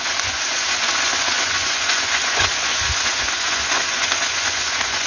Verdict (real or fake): fake